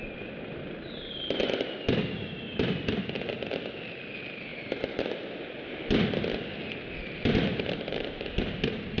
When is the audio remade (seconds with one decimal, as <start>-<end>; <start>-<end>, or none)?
4.5-5.1; 7.5-8.2